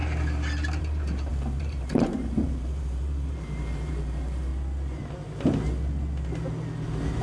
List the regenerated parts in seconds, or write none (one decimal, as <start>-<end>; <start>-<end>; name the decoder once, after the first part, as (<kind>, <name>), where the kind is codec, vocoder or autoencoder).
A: 0.8-4.5 (vocoder, BigVGAN v2)